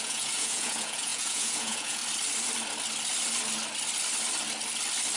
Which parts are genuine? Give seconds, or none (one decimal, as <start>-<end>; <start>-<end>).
2.0-5.2